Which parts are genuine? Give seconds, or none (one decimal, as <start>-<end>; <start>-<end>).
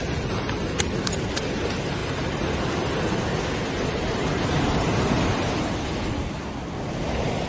0.0-2.0; 2.7-7.5